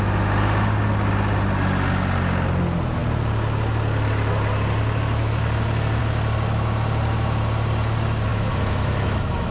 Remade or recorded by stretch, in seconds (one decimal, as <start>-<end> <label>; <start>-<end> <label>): 0.0-8.3 recorded; 8.3-9.5 remade